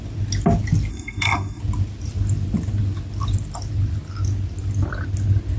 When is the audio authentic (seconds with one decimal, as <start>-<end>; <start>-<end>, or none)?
0.0-0.9; 1.6-5.6